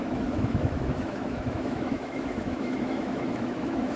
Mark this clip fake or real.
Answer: fake